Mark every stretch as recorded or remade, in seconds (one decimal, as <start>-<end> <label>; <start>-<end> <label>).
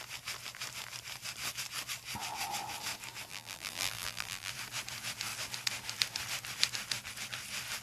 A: 0.0-3.3 recorded; 3.3-4.5 remade; 4.5-7.8 recorded